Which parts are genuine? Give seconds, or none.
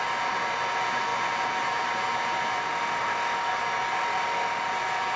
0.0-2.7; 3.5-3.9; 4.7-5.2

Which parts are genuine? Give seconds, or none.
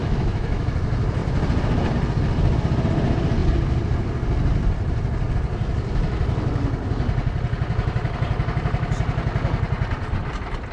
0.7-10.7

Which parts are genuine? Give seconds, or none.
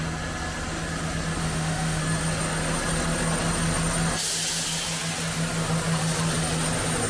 0.0-1.4; 2.0-7.1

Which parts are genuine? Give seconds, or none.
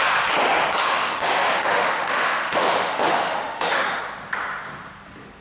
0.0-0.8; 4.0-5.4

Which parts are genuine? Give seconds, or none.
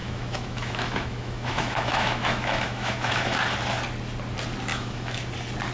3.4-4.7; 5.3-5.7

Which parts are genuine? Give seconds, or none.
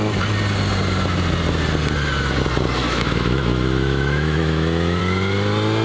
0.0-2.8; 5.0-5.8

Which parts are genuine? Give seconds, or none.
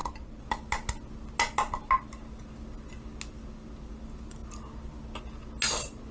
0.0-6.1